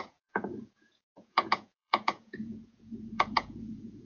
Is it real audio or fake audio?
fake